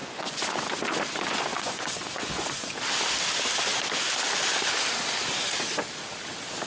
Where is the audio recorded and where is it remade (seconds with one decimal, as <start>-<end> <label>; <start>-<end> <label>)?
0.0-0.6 remade; 0.6-1.5 recorded; 1.5-2.7 remade; 2.7-6.7 recorded